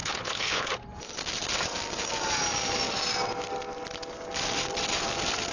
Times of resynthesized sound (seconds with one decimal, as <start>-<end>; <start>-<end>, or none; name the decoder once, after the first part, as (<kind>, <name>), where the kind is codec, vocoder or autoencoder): 0.0-0.7 (codec, HILCodec)